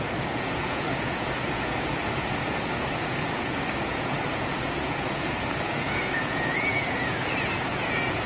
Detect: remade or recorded remade